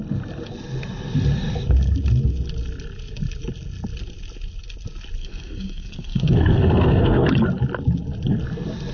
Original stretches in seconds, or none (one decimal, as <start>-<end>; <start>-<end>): 0.0-5.2; 7.3-8.9